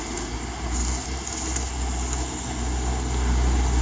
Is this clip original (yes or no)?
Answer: yes